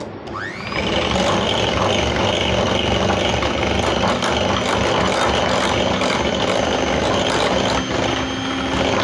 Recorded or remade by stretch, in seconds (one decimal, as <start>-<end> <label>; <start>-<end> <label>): 0.0-9.0 recorded